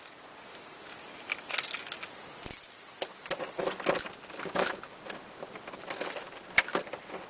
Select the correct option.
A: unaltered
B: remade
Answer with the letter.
A